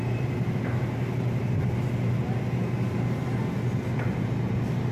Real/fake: real